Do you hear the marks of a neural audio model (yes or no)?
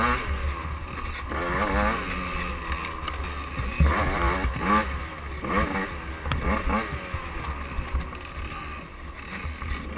no